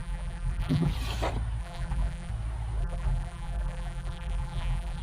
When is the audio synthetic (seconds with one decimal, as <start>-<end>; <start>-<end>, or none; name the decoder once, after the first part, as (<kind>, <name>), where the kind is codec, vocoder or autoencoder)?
0.0-0.9 (vocoder, BigVGAN v2); 1.6-2.3; 2.8-5.0

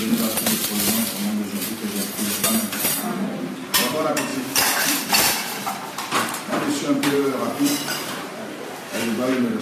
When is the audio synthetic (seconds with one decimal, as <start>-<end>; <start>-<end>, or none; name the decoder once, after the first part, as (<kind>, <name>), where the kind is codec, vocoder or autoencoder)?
2.0-2.7 (vocoder, BigVGAN v2); 4.3-8.4

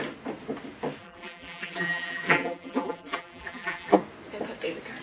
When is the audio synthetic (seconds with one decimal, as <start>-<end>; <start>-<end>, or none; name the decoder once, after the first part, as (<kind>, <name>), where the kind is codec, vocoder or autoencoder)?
1.0-4.0 (vocoder, BigVGAN v2)

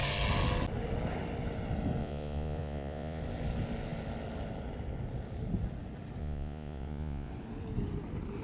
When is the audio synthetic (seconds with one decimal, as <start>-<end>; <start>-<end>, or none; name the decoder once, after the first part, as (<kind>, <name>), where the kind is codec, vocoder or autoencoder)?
2.0-3.2 (vocoder, Vocos); 6.2-7.3

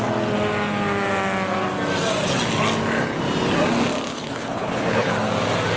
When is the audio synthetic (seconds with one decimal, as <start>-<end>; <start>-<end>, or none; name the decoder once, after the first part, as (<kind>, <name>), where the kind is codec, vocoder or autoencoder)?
4.1-5.1 (codec, HILCodec)

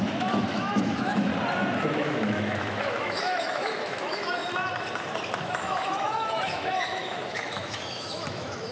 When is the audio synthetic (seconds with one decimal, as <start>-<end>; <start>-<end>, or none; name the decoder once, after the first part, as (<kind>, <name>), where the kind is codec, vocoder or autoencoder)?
0.0-1.3 (autoencoder, DAC-VAE); 1.9-4.4; 5.3-8.7